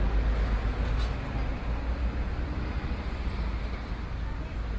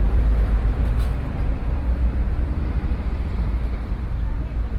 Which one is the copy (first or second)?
second